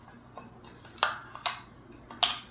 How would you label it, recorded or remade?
recorded